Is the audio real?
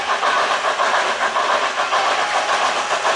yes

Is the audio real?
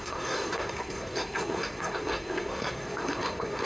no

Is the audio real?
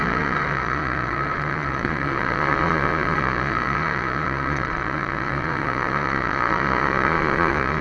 no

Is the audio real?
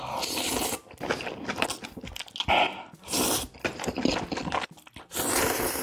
yes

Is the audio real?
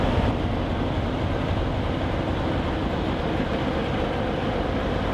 yes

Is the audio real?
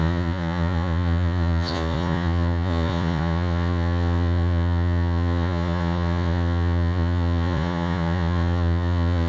no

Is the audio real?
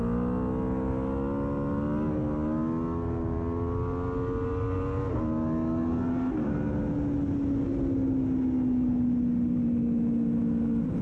yes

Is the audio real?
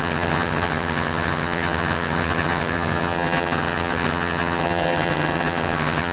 no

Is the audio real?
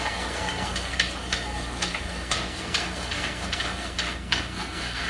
no